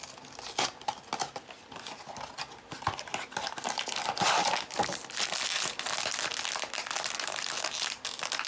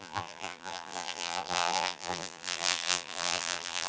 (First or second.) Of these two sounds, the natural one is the first